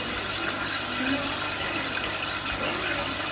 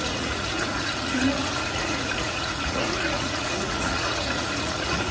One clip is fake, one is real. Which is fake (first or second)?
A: second